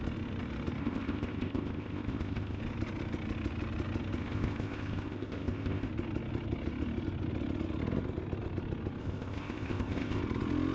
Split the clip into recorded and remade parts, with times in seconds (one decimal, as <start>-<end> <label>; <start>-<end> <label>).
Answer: 0.0-0.8 recorded; 0.8-2.6 remade; 2.6-4.2 recorded; 4.2-5.9 remade; 5.9-9.0 recorded; 9.0-10.2 remade; 10.2-10.7 recorded